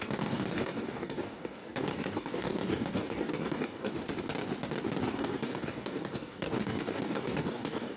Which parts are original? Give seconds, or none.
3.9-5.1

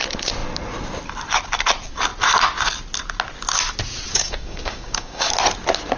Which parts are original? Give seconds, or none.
0.0-4.1; 5.3-6.0

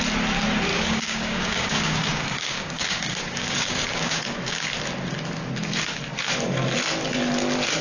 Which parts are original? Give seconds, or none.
0.0-0.7; 4.7-7.8

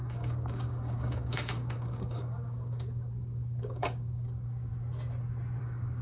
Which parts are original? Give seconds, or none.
4.7-5.6

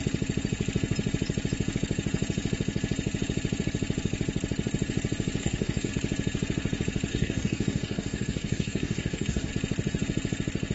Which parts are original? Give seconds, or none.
0.0-5.4; 5.9-7.1; 9.5-10.7

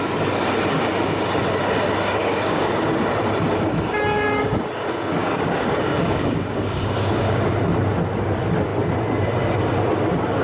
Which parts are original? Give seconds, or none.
0.0-2.2; 2.8-5.2; 7.5-10.4

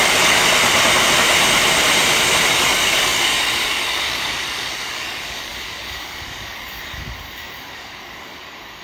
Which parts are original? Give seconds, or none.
0.4-2.5